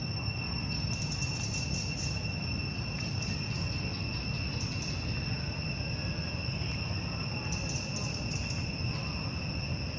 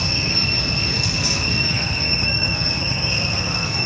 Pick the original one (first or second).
first